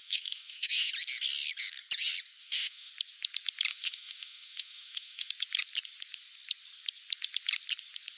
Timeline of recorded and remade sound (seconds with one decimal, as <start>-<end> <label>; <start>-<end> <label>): 0.0-0.9 remade; 0.9-2.4 recorded; 2.4-2.9 remade; 2.9-3.7 recorded; 3.7-5.3 remade; 5.3-8.2 recorded